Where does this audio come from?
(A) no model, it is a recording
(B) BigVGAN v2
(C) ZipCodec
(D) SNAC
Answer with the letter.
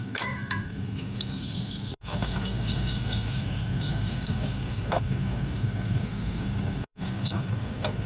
D